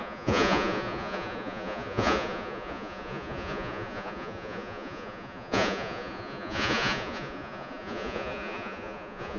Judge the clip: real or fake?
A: fake